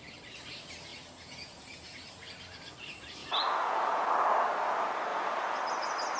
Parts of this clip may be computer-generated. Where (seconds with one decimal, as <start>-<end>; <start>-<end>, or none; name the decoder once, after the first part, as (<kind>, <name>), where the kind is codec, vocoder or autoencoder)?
0.9-2.1 (vocoder, Vocos); 3.2-4.1; 5.1-5.6